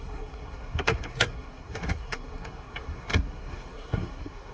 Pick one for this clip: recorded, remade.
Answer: remade